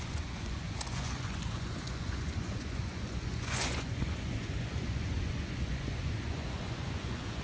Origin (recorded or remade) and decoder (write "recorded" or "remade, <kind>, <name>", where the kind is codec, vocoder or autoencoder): remade, vocoder, Vocos